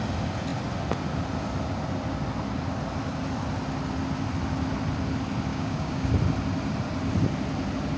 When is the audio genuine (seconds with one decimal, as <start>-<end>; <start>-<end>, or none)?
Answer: 0.0-5.5; 6.1-8.0